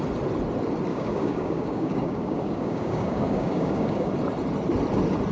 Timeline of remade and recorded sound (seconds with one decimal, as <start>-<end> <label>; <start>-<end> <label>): 0.0-0.9 recorded; 0.9-4.1 remade; 4.1-5.3 recorded